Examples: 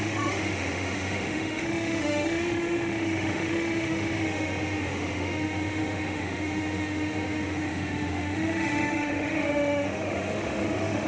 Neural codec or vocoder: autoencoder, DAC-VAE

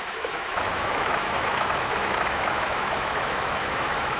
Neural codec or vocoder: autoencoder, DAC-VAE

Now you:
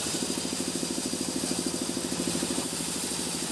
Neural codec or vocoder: none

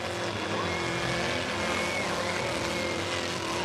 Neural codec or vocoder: none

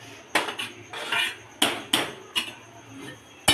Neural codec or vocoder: none